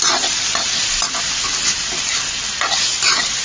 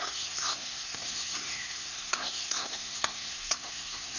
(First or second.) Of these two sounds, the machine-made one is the second